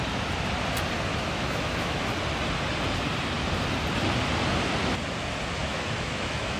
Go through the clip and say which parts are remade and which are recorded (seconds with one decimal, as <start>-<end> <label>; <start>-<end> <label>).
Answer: 0.0-1.1 recorded; 1.1-2.0 remade; 2.0-5.6 recorded; 5.6-6.6 remade